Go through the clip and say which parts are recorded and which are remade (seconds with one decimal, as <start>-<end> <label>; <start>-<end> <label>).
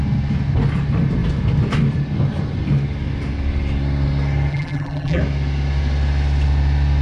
0.0-4.5 recorded; 4.5-5.2 remade; 5.2-7.0 recorded